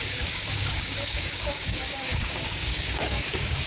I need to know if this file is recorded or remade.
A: remade